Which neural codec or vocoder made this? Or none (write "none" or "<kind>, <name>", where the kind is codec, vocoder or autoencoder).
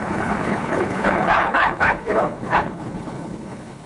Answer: codec, HILCodec